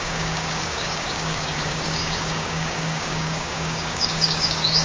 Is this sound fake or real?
fake